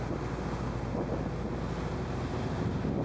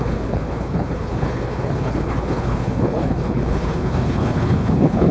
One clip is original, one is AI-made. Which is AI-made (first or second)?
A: second